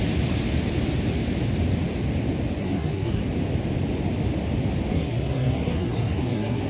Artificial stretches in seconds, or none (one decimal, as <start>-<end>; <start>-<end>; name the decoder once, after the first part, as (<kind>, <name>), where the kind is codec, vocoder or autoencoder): 2.6-3.2 (codec, SNAC); 4.9-6.7